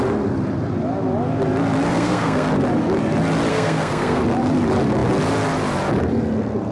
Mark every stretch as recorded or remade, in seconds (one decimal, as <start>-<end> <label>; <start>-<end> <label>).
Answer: 0.0-1.9 recorded; 1.9-2.5 remade; 2.5-3.5 recorded; 3.5-4.2 remade; 4.2-6.7 recorded

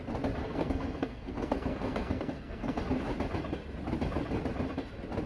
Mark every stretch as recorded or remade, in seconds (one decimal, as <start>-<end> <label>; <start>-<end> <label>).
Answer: 0.0-0.4 recorded; 0.4-2.8 remade; 2.8-5.3 recorded

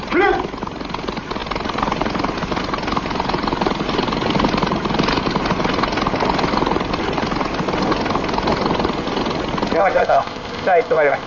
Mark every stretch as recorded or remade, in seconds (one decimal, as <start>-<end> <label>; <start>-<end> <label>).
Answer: 0.0-9.8 recorded; 9.8-11.3 remade

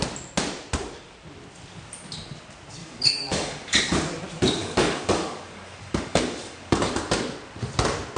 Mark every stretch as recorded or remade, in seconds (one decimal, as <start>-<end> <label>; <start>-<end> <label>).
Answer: 0.0-2.8 recorded; 2.8-3.8 remade; 3.8-4.6 recorded; 4.6-7.0 remade; 7.0-8.2 recorded

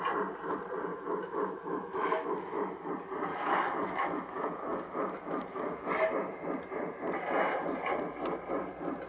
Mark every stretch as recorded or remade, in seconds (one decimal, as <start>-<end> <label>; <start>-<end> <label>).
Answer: 0.0-0.9 recorded; 0.9-2.9 remade; 2.9-3.3 recorded; 3.3-5.9 remade; 5.9-9.1 recorded

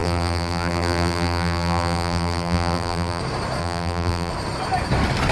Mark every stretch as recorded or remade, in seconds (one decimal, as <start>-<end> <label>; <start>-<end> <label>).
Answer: 0.0-3.2 remade; 3.2-3.6 recorded; 3.6-4.3 remade; 4.3-5.3 recorded

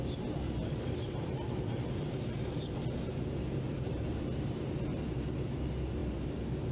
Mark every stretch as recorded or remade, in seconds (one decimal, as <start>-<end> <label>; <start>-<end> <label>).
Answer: 0.0-0.6 recorded; 0.6-4.6 remade; 4.6-6.7 recorded

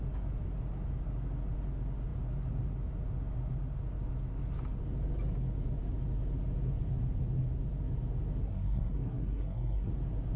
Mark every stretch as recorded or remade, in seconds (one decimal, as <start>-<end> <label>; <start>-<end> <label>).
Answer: 0.0-8.4 recorded; 8.4-9.9 remade; 9.9-10.4 recorded